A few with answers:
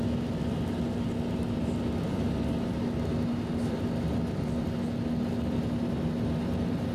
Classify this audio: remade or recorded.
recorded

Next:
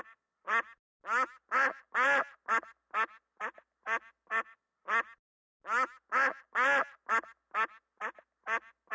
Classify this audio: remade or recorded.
recorded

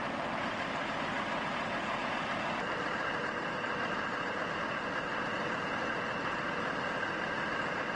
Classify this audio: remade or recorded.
recorded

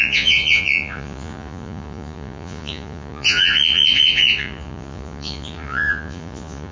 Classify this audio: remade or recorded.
remade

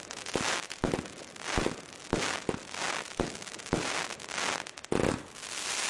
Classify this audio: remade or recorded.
recorded